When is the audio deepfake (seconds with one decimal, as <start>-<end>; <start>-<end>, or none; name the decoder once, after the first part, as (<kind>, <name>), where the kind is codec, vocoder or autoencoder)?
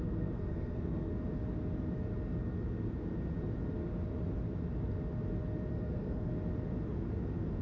0.0-1.1 (codec, SNAC); 5.7-6.3